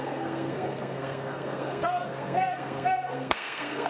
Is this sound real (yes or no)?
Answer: no